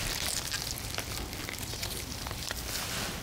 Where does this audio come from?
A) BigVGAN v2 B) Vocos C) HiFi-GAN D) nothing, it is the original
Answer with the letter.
D